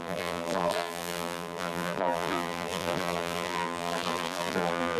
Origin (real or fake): fake